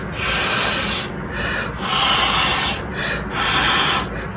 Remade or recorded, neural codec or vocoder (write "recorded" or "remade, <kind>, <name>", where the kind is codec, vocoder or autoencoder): recorded